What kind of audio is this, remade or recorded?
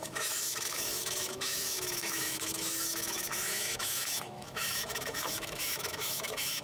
remade